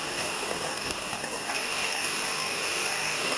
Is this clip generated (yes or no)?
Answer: yes